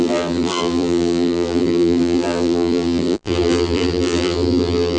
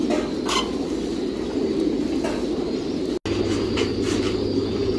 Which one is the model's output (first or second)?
first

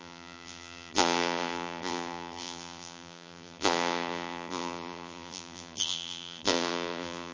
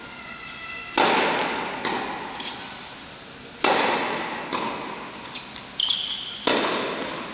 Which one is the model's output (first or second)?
first